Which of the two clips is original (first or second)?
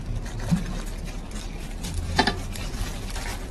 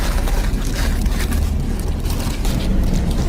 second